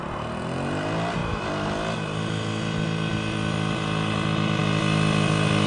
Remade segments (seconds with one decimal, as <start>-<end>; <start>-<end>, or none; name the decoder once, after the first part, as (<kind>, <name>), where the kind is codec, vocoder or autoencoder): none